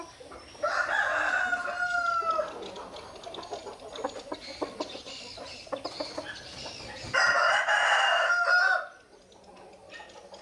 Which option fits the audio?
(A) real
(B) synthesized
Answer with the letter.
A